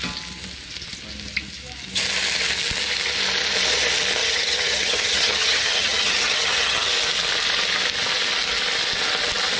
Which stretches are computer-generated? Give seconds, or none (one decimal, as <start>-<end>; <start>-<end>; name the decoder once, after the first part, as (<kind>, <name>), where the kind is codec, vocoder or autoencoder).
4.2-6.9 (vocoder, HiFi-GAN)